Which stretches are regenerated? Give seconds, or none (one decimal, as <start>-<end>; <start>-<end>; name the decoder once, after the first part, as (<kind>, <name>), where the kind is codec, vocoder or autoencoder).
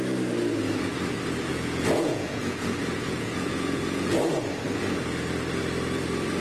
1.5-4.2 (vocoder, Vocos)